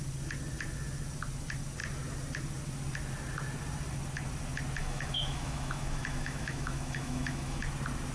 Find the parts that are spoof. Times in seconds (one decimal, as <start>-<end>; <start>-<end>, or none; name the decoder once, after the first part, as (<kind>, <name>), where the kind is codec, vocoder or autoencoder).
4.8-7.6 (autoencoder, DAC-VAE)